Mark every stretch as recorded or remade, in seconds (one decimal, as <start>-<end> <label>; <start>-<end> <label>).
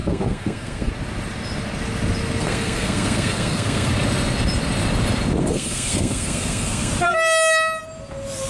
0.0-0.9 remade; 0.9-2.4 recorded; 2.4-3.9 remade; 3.9-5.4 recorded; 5.4-6.9 remade; 6.9-8.5 recorded